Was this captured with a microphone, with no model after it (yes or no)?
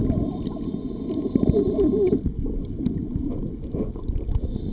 yes